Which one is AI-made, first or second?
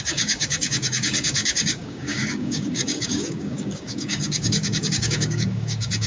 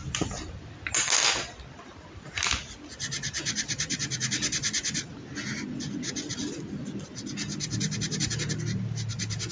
first